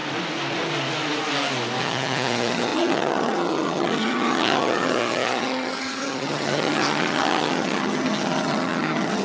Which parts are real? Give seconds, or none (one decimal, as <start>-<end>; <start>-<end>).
0.0-1.8